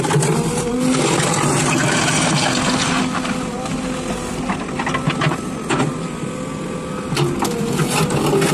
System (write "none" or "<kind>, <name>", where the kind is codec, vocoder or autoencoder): none